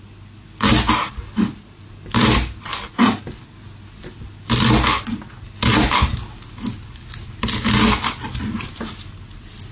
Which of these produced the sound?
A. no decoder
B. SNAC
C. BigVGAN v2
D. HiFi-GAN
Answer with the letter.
A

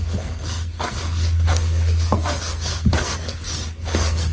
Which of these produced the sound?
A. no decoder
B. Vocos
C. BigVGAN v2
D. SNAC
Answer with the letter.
D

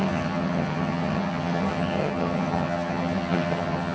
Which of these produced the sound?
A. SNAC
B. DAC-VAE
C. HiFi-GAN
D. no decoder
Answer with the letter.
C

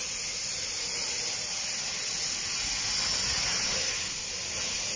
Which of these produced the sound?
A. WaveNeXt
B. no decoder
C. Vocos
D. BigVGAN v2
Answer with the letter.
B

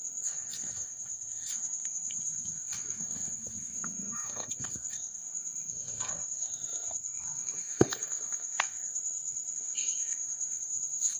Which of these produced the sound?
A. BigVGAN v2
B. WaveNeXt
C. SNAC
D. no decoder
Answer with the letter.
C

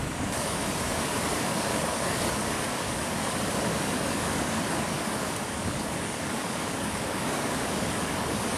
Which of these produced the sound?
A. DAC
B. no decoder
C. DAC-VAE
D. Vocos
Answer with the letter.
A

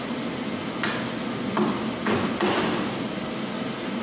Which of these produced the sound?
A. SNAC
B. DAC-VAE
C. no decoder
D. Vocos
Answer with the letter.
C